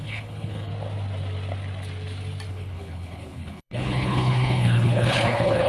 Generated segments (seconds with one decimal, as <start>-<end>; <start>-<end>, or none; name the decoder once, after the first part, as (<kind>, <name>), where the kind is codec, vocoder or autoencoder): 0.0-0.7 (codec, HILCodec); 2.5-5.7